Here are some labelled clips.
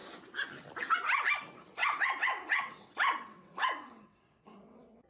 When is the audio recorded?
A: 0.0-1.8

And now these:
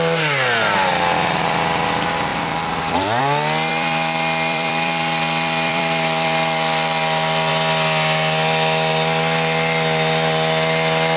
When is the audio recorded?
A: 0.0-2.3; 3.2-3.7; 7.5-11.2

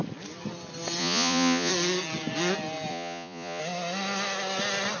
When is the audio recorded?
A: 0.0-1.0; 1.7-2.9; 3.6-5.0